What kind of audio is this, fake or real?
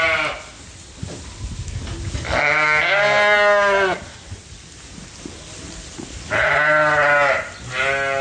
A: real